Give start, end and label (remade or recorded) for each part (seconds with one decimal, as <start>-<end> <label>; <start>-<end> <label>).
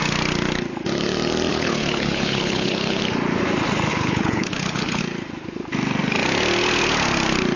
0.0-1.5 recorded; 1.5-3.0 remade; 3.0-3.9 recorded; 3.9-5.0 remade; 5.0-7.6 recorded